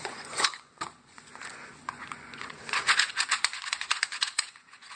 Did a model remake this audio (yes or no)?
yes